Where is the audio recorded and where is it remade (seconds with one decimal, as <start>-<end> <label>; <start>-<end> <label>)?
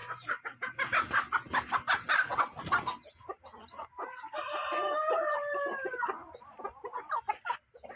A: 0.0-8.0 recorded